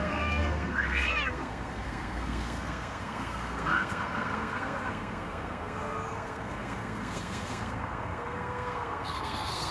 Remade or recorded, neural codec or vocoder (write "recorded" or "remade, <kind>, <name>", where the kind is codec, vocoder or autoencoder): remade, codec, SNAC